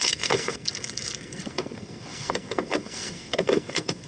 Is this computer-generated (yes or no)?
yes